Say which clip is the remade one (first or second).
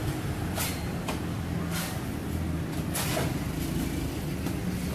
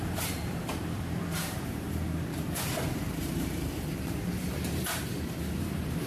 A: second